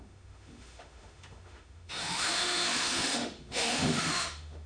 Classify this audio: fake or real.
fake